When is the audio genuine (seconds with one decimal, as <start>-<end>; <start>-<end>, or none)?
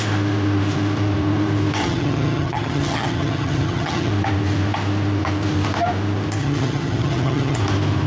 0.0-1.8; 4.1-6.4; 7.6-8.1